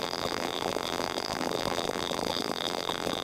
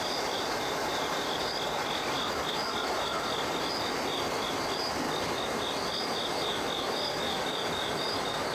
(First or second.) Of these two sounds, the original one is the second